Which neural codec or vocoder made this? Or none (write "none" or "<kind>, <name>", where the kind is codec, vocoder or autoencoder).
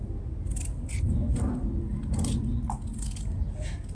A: none